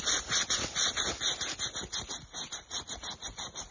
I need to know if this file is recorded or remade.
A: remade